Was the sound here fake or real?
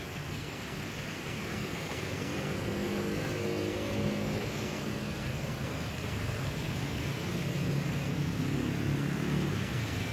fake